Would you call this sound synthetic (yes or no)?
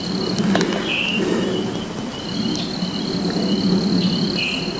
no